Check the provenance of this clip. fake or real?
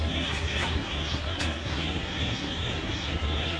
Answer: fake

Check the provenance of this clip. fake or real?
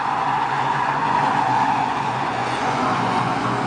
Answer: fake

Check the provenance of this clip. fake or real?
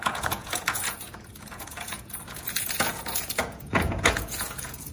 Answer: fake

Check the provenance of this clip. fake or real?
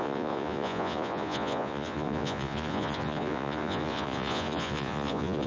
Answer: fake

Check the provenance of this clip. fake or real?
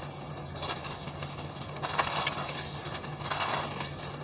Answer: real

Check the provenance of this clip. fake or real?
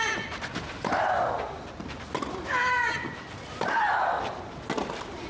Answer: real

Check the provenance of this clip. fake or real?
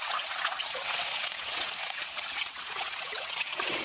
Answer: fake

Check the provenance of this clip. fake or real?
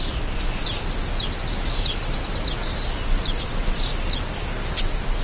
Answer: real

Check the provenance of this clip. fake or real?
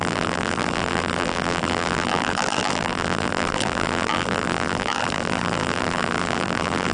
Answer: fake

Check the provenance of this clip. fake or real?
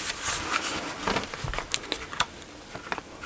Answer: real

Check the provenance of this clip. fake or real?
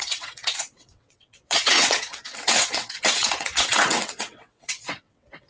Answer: fake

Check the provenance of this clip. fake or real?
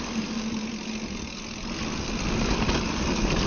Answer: real